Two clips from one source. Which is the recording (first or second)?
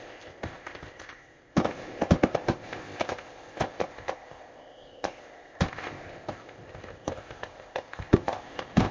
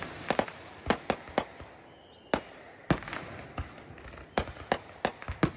second